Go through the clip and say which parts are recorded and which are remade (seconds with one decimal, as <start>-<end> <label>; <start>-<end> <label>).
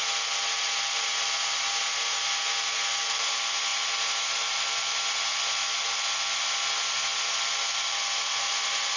0.0-9.0 recorded